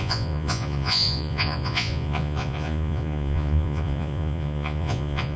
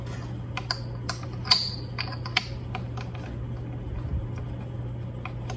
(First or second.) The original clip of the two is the second